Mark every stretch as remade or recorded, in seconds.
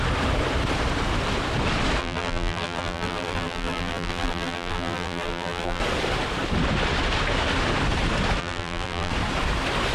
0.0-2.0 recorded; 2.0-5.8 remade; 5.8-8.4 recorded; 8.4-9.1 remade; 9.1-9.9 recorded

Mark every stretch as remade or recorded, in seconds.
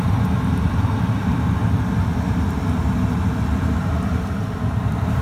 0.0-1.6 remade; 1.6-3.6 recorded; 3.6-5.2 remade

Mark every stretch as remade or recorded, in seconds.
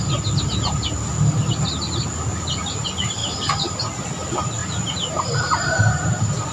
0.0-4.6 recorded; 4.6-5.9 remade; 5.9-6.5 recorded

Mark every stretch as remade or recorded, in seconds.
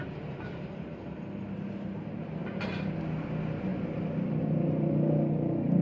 0.0-2.4 recorded; 2.4-3.0 remade; 3.0-5.8 recorded